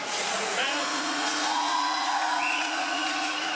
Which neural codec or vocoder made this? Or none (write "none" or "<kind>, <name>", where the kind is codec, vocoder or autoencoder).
vocoder, Vocos